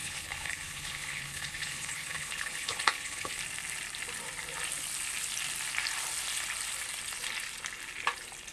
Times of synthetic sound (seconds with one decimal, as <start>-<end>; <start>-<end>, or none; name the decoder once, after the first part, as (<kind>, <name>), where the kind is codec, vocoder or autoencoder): 0.0-3.4 (codec, HILCodec)